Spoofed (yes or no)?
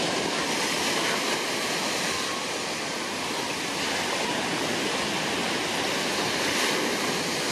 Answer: no